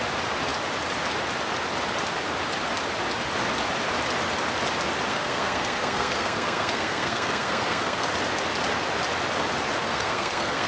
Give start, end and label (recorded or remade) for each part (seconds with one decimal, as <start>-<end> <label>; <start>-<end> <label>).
0.0-5.1 recorded; 5.1-8.1 remade; 8.1-9.8 recorded; 9.8-10.7 remade